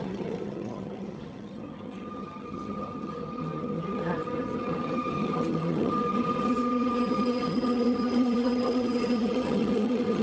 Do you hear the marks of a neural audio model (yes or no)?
yes